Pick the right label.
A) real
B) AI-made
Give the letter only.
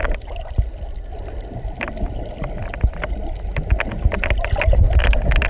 A